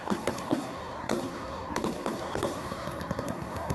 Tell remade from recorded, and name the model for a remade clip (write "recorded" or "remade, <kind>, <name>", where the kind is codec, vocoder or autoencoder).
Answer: remade, codec, SNAC